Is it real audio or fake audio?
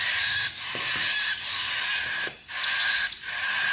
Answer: real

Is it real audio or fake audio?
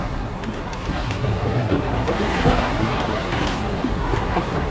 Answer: fake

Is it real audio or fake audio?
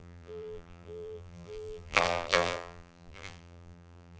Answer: fake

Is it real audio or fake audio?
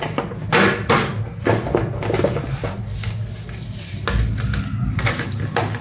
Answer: real